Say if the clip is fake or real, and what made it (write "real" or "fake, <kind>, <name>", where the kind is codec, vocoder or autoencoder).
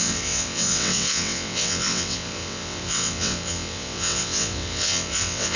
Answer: fake, vocoder, WaveNeXt